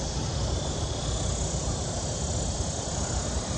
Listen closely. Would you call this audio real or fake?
fake